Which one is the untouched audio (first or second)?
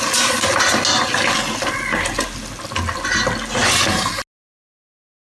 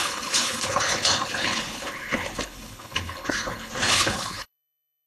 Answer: first